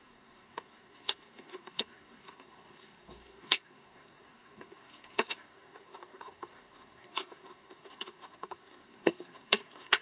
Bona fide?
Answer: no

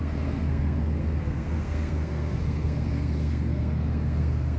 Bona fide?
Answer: no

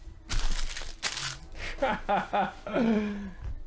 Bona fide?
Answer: yes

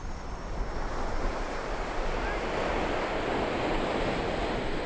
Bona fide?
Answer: yes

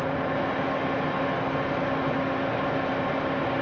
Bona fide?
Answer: yes